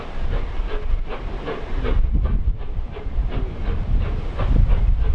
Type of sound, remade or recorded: recorded